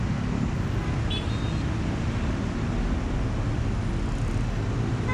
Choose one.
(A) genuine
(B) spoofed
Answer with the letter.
A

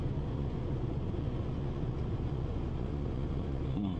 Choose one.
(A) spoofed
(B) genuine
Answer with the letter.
A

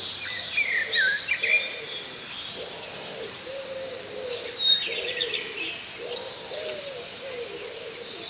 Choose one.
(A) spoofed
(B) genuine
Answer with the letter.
B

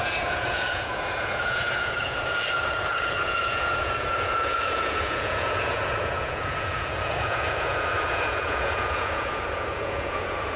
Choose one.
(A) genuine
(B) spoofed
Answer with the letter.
B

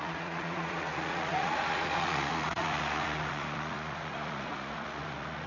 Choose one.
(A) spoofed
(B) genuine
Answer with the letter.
A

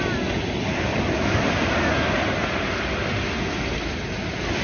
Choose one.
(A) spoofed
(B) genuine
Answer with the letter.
B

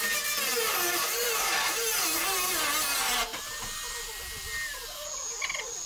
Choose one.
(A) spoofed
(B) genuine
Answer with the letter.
B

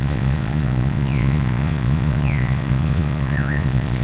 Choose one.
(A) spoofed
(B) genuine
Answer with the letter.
A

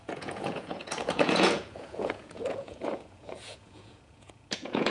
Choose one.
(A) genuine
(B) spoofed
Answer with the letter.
B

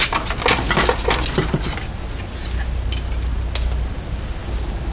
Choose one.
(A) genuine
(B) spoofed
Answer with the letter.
A